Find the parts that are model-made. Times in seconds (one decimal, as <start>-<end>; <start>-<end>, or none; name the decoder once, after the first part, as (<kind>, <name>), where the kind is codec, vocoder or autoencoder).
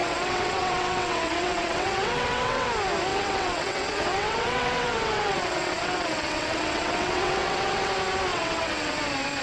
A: 0.0-2.7 (vocoder, WaveNeXt); 3.1-7.9; 8.3-9.0